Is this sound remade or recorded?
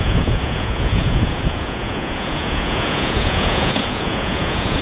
remade